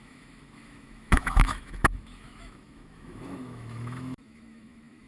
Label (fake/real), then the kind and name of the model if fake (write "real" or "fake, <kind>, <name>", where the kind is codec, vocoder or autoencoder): fake, autoencoder, DAC-VAE